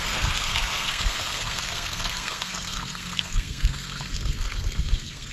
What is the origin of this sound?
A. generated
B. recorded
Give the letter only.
A